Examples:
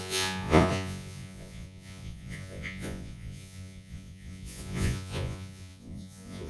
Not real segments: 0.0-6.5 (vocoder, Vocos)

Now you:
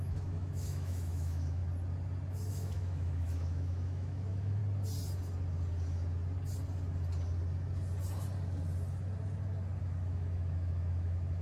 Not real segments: 0.0-1.6 (autoencoder, DAC-VAE); 2.5-4.6; 9.8-11.4

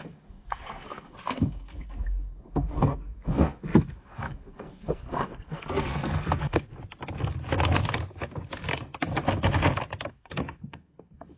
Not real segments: 0.0-6.7 (codec, SNAC); 10.1-11.4

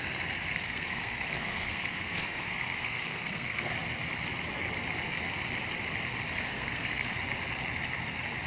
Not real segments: 0.5-3.7 (codec, SNAC); 6.5-7.1

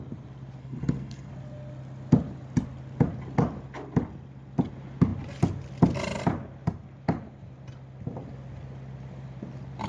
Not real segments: 0.6-1.3 (codec, SNAC)

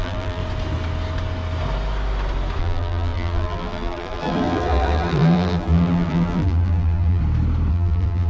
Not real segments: 0.0-0.4 (vocoder, BigVGAN v2); 2.6-7.2; 7.7-8.3

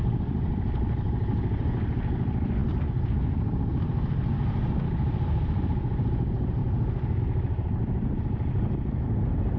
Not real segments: 2.6-3.1 (vocoder, BigVGAN v2)

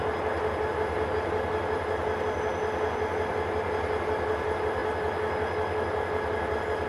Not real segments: none